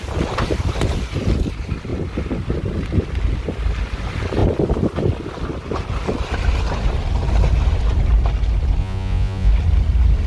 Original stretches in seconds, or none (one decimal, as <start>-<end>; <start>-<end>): 0.0-8.8; 9.5-10.3